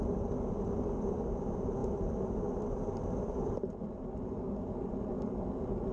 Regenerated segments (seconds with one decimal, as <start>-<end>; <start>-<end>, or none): none